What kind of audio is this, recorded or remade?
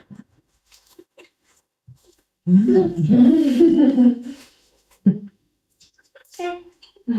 remade